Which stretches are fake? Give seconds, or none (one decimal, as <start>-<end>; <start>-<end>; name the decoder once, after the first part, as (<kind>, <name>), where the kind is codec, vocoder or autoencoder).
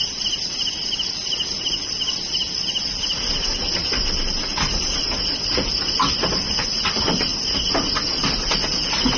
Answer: none